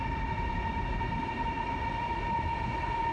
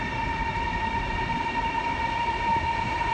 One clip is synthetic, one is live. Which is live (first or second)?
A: first